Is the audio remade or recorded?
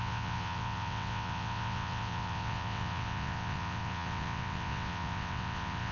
remade